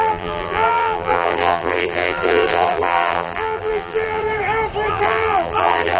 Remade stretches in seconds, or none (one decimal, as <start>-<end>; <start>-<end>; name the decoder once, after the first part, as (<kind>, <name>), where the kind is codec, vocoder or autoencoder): 0.0-4.2 (vocoder, BigVGAN v2); 4.9-6.0